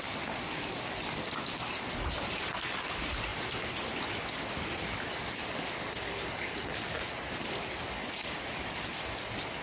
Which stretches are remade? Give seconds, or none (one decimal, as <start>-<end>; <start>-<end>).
none